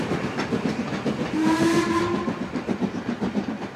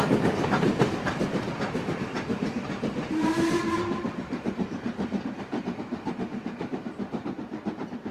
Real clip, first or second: first